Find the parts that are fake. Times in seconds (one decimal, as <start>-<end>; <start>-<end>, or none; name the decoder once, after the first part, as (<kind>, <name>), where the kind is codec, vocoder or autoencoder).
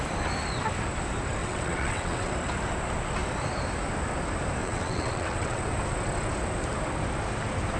1.4-2.3 (vocoder, WaveNeXt); 4.6-5.6